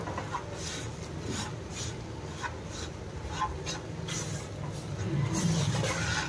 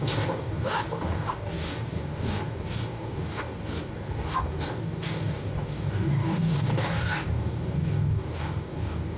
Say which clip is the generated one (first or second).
second